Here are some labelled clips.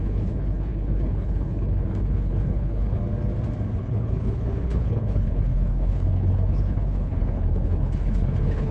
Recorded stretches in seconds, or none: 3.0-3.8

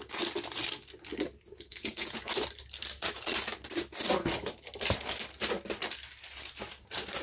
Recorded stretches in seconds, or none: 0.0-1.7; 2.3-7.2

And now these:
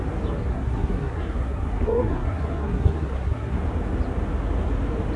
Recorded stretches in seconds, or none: 0.0-0.5; 3.6-5.2

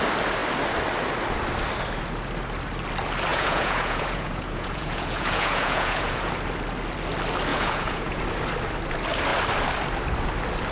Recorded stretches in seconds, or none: 0.0-3.3; 6.3-7.5; 8.2-10.7

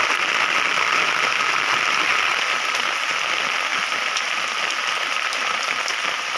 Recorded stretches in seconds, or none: 0.0-3.7; 5.8-6.4